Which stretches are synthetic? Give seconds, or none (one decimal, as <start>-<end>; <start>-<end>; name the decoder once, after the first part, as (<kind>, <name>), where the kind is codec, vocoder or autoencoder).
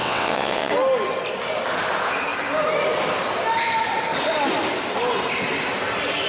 0.0-0.7 (vocoder, WaveNeXt)